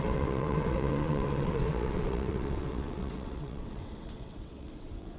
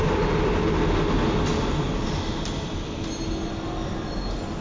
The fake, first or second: first